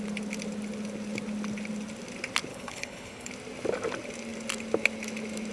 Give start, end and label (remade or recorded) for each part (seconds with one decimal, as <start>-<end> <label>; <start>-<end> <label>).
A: 0.0-2.5 recorded; 2.5-3.3 remade; 3.3-5.5 recorded